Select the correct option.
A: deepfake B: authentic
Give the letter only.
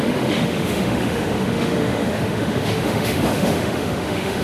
A